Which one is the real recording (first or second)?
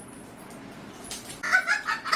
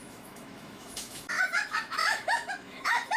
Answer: first